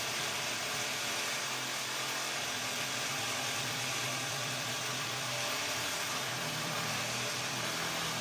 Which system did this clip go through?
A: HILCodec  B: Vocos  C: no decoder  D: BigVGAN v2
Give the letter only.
D